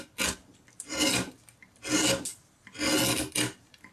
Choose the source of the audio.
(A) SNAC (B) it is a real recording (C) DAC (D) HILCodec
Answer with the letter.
B